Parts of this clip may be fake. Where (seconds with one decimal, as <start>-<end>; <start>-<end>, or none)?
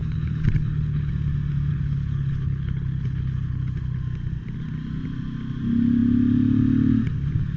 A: 0.0-1.1; 1.7-4.0